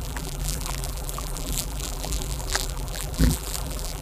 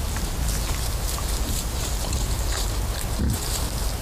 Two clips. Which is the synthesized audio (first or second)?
first